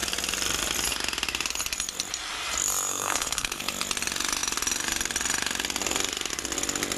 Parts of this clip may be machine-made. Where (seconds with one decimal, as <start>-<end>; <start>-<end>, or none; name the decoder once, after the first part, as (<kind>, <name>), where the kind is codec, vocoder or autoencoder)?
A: 2.9-3.6 (codec, SNAC)